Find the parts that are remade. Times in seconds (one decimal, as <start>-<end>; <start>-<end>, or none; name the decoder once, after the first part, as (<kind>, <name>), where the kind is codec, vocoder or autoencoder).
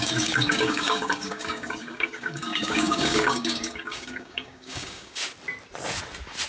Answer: 0.0-5.2 (codec, DAC)